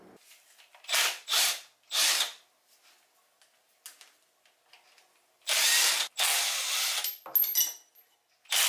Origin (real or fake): real